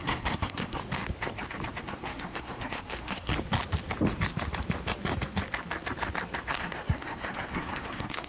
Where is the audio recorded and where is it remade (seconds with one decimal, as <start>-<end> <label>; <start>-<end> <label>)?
0.0-0.8 remade; 0.8-1.8 recorded; 1.8-3.3 remade; 3.3-6.5 recorded; 6.5-8.3 remade